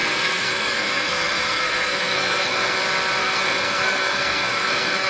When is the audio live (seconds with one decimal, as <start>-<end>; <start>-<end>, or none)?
2.8-3.2